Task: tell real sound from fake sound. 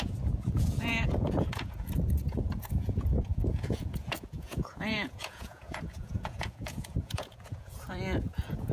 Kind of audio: fake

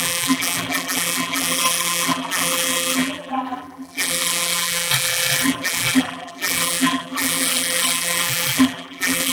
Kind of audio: fake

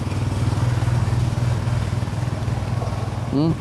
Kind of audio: real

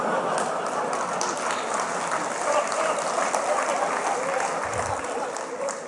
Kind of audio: real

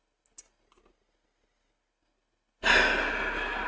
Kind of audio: real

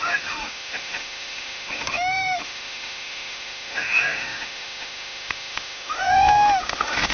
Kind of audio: fake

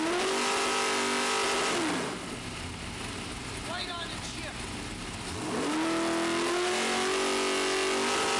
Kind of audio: real